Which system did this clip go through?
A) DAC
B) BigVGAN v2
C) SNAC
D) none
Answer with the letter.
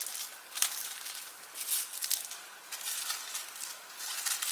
D